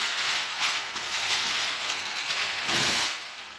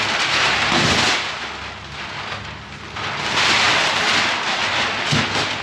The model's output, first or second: first